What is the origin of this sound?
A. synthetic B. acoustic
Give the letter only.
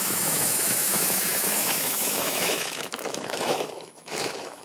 A